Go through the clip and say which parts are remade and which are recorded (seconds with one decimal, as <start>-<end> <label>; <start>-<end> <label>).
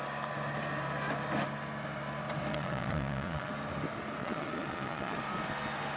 0.0-2.5 recorded; 2.5-3.5 remade; 3.5-4.2 recorded; 4.2-5.2 remade; 5.2-6.0 recorded